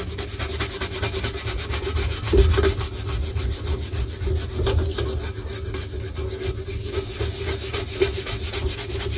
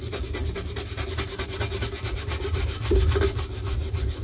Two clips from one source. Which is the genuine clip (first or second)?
first